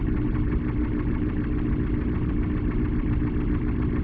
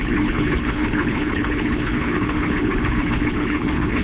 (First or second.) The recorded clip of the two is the first